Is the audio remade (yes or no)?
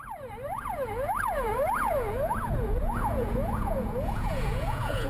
yes